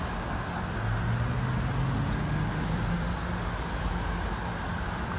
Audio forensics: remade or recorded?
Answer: recorded